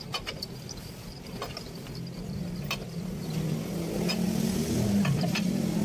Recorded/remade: recorded